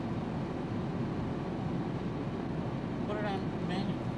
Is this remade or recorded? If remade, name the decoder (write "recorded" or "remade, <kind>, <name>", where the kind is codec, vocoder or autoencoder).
recorded